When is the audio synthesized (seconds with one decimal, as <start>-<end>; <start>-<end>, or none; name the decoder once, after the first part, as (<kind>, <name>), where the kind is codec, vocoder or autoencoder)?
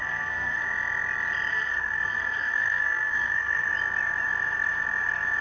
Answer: 0.0-0.6 (codec, SNAC); 1.5-3.7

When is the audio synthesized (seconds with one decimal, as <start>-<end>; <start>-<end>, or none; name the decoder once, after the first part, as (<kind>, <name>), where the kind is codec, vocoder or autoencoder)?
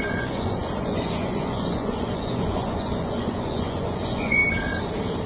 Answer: 0.0-4.4 (vocoder, Vocos)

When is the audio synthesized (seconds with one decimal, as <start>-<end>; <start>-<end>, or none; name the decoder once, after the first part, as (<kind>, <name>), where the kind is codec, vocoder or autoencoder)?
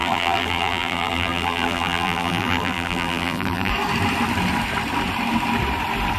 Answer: 0.0-3.7 (vocoder, BigVGAN v2)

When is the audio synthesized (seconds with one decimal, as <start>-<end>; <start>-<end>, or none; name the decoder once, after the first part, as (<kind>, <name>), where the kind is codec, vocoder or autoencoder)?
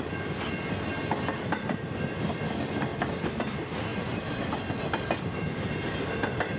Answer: 2.9-3.4 (vocoder, BigVGAN v2); 3.9-4.5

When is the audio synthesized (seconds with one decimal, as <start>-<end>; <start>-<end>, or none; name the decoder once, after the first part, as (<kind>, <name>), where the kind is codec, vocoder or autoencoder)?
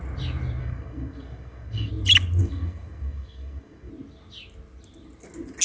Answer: 0.6-1.9 (codec, SNAC); 2.4-3.9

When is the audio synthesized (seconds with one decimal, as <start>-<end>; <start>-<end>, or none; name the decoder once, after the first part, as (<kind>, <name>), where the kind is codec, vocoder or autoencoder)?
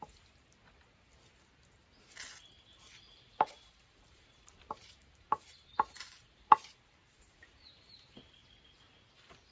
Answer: 3.3-8.2 (vocoder, BigVGAN v2)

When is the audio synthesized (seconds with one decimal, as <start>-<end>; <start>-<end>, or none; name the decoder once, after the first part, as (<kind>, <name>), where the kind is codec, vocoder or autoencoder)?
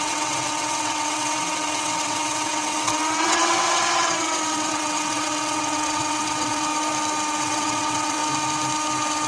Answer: 0.0-6.7 (vocoder, WaveNeXt); 7.4-8.2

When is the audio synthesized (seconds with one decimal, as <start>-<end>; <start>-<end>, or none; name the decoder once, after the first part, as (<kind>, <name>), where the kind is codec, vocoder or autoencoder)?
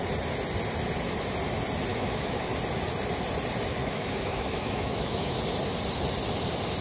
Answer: 1.9-2.5 (autoencoder, DAC-VAE); 3.8-5.4